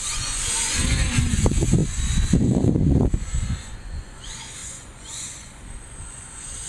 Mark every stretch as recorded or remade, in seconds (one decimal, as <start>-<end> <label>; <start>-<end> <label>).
0.0-6.7 remade